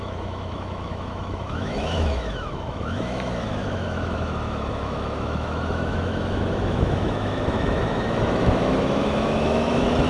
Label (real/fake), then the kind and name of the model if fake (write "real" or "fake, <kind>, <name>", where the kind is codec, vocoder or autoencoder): fake, autoencoder, DAC-VAE